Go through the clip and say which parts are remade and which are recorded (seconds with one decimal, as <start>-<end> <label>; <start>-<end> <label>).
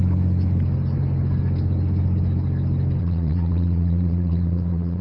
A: 0.0-3.0 recorded; 3.0-5.0 remade